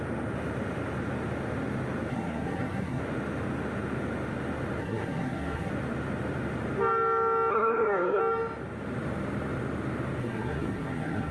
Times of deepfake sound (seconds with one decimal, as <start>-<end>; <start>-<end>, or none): 2.1-3.0; 4.8-5.7; 7.5-8.2; 10.2-11.3